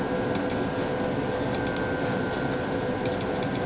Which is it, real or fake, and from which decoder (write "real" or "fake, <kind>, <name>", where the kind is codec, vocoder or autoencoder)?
real